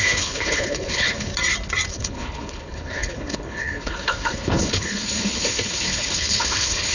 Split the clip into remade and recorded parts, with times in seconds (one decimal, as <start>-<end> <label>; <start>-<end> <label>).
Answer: 0.0-1.3 remade; 1.3-1.9 recorded; 1.9-6.9 remade